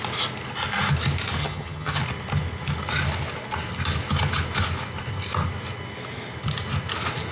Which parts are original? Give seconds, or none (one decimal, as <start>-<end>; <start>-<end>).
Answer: 0.0-1.4; 2.0-7.3